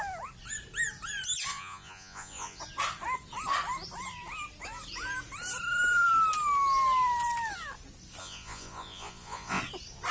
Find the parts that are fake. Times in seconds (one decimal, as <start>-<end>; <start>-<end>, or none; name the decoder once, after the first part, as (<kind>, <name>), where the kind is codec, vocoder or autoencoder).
1.5-2.6 (vocoder, Vocos); 8.2-9.6